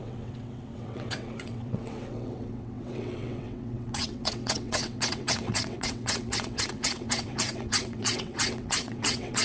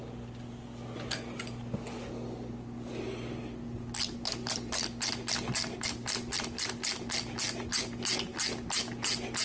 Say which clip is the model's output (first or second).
first